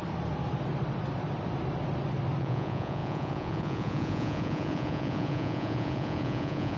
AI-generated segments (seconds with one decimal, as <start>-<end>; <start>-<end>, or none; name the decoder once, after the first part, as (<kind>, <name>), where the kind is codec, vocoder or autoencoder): 2.4-6.8 (vocoder, Vocos)